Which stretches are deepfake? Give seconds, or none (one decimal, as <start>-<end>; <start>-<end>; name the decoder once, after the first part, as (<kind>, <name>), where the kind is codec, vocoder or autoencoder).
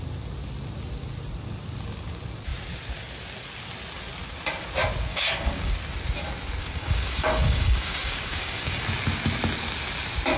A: 5.1-5.7 (codec, DAC); 6.6-8.8